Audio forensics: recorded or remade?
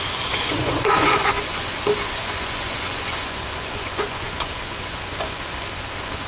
remade